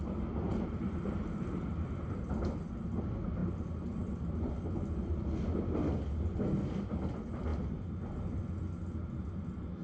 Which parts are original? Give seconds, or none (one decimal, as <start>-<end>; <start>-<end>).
0.0-0.5; 1.6-3.4; 4.7-9.8